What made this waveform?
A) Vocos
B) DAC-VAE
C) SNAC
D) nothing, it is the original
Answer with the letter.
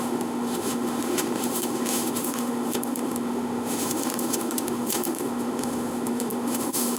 B